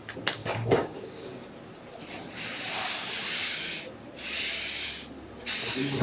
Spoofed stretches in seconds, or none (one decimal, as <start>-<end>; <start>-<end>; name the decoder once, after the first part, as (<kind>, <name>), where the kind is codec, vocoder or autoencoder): 0.4-1.5 (codec, DAC)